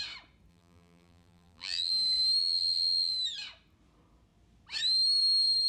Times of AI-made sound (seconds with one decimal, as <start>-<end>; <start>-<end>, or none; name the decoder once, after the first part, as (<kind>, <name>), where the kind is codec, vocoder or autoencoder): 0.5-1.9 (vocoder, BigVGAN v2); 2.4-3.1